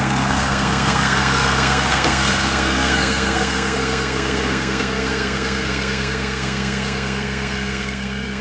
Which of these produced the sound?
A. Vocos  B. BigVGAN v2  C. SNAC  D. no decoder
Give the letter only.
C